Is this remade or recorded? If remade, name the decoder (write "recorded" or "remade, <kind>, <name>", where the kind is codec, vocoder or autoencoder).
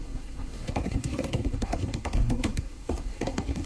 remade, codec, SNAC